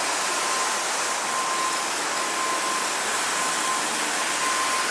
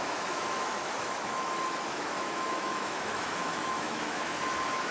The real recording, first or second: first